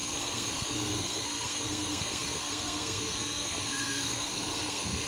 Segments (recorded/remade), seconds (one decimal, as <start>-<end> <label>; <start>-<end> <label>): 0.0-5.1 remade